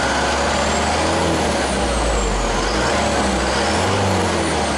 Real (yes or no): yes